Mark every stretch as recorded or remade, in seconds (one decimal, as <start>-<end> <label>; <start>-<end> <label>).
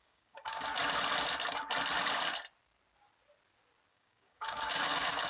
0.0-0.7 remade; 0.7-3.9 recorded; 3.9-5.3 remade